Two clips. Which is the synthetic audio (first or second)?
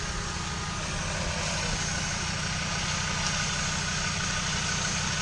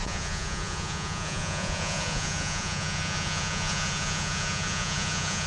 second